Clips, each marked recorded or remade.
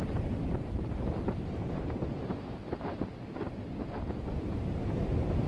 remade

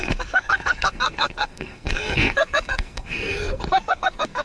remade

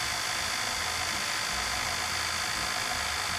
recorded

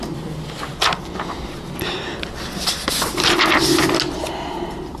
recorded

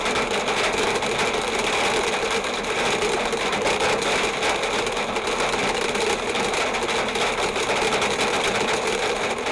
recorded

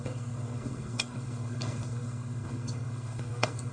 remade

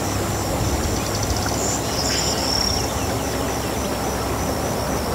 recorded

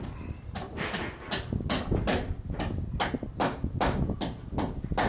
recorded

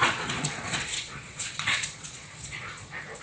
remade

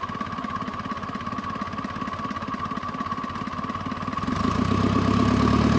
recorded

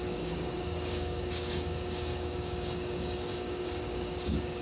remade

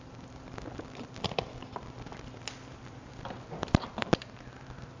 recorded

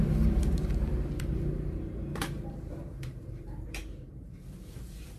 remade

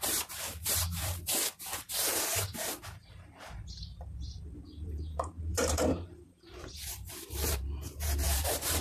remade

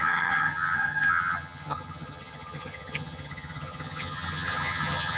remade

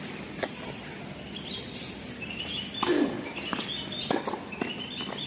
recorded